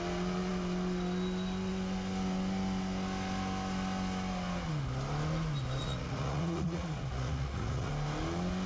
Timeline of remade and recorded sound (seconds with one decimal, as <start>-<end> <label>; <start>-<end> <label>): 0.0-5.8 recorded; 5.8-7.9 remade; 7.9-8.7 recorded